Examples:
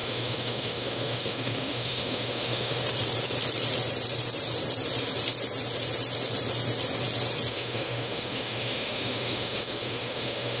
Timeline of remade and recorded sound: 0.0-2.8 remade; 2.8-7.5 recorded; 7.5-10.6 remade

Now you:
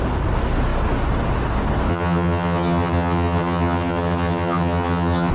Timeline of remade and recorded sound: 0.0-1.9 recorded; 1.9-5.3 remade

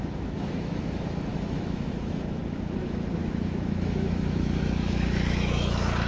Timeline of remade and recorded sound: 0.0-6.1 remade

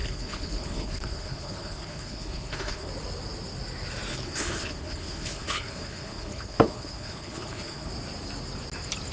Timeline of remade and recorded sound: 0.0-2.9 remade; 2.9-4.1 recorded; 4.1-7.9 remade; 7.9-9.1 recorded

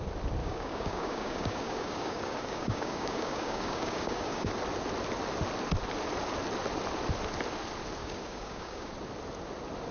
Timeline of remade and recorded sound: 0.0-0.4 recorded; 0.4-4.5 remade; 4.5-8.0 recorded; 8.0-8.9 remade; 8.9-9.9 recorded

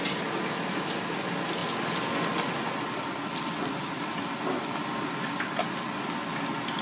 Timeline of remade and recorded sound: 0.0-6.8 recorded